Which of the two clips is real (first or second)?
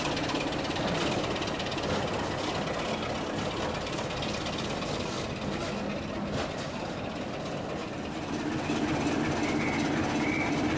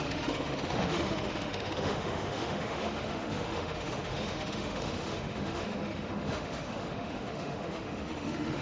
first